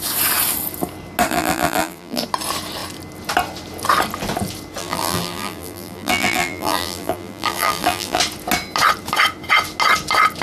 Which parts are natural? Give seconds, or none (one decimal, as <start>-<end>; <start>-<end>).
0.0-1.3; 2.2-4.8; 8.2-10.4